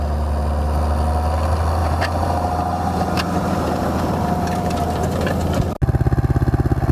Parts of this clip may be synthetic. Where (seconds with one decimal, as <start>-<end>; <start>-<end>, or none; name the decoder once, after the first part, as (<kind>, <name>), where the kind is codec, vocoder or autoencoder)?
1.8-5.3 (vocoder, BigVGAN v2)